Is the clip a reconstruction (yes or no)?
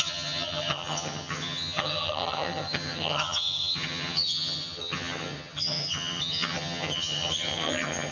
yes